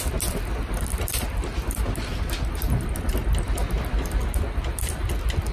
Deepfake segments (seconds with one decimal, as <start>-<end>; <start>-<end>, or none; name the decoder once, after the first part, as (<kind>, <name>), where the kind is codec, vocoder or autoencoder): 0.5-3.1 (vocoder, BigVGAN v2)